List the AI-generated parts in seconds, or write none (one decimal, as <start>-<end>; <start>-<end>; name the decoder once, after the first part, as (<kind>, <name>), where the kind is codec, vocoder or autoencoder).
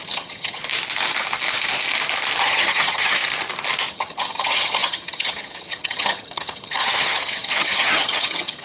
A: 0.0-0.6 (vocoder, HiFi-GAN); 2.4-3.2; 3.9-8.6